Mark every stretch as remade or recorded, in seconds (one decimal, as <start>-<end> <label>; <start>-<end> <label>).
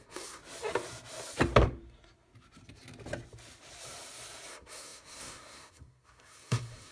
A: 0.0-0.4 remade; 0.4-4.5 recorded; 4.5-6.9 remade